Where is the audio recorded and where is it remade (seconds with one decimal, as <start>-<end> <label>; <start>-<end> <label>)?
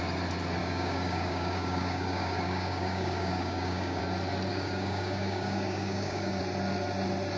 0.0-0.6 recorded; 0.6-4.0 remade; 4.0-4.5 recorded; 4.5-6.4 remade; 6.4-7.4 recorded